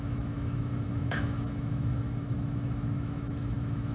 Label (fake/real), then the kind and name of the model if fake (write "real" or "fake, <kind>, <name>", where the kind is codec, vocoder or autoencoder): fake, autoencoder, DAC-VAE